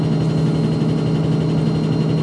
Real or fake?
real